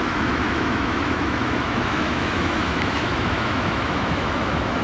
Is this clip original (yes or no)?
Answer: no